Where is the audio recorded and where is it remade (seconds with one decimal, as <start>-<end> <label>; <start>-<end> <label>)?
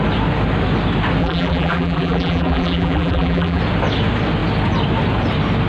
0.0-1.2 recorded; 1.2-3.6 remade; 3.6-5.7 recorded